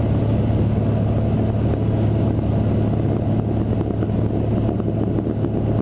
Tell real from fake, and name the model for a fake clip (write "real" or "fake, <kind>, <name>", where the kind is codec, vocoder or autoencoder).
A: real